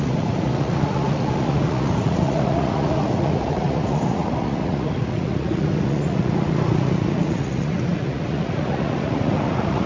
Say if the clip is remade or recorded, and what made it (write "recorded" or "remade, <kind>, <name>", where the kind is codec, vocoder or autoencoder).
remade, vocoder, Vocos